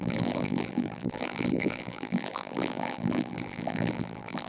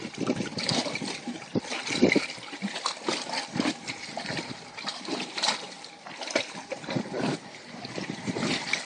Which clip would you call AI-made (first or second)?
first